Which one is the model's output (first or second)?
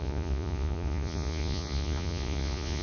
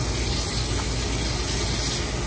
first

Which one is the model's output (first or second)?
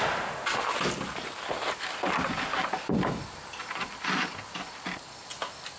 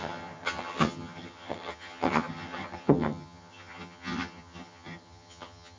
second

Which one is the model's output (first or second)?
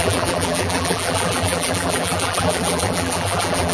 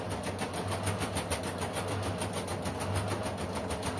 first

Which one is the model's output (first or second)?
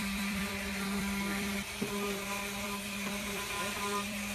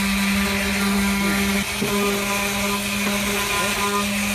first